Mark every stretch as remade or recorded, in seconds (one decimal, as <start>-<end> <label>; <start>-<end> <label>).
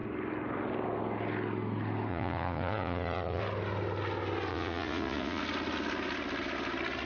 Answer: 0.0-2.1 recorded; 2.1-3.4 remade; 3.4-4.5 recorded; 4.5-5.4 remade; 5.4-7.1 recorded